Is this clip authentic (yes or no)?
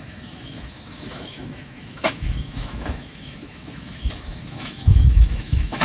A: no